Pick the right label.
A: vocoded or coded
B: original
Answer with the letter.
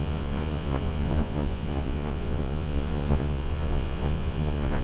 A